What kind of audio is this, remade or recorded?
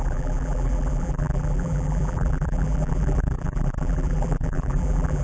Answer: remade